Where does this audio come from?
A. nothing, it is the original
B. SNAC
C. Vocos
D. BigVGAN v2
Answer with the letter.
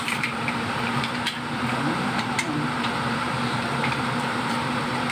D